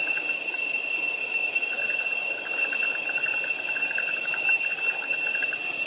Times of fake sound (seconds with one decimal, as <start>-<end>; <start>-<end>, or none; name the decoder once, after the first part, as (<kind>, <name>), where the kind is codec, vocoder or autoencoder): 1.4-4.9 (vocoder, BigVGAN v2)